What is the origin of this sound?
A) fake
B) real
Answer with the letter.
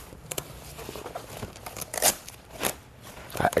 A